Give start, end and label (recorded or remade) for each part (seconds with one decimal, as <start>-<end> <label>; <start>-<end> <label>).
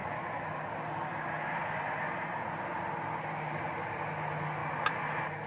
0.0-5.5 recorded